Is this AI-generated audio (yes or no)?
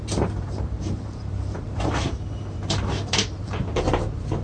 yes